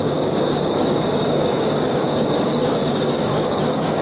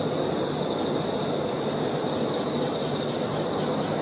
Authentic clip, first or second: second